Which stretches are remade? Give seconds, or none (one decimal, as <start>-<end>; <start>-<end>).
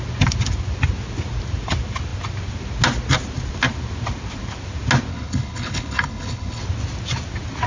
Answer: 5.1-6.6